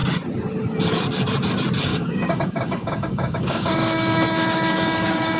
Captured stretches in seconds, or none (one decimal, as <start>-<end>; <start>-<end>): 0.0-1.9

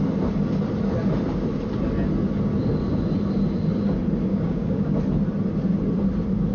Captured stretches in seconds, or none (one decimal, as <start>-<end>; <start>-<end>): 0.0-4.3; 5.0-6.5

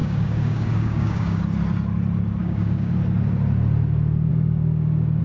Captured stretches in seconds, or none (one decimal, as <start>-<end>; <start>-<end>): 1.4-2.4; 2.9-4.3

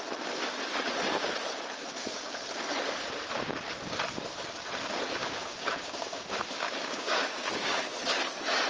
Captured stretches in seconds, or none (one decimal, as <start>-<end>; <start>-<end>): 0.0-5.2; 7.8-8.7

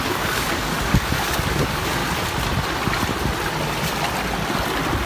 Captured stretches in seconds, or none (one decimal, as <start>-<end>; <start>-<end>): 2.0-5.1